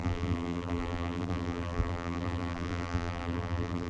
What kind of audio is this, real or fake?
fake